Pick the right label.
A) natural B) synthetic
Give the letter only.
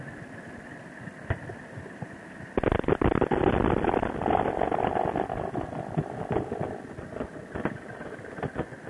A